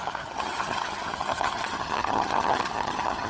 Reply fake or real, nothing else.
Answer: fake